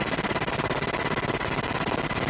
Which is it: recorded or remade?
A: recorded